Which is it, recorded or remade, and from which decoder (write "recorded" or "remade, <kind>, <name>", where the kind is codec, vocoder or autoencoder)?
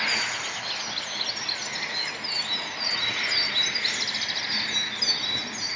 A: recorded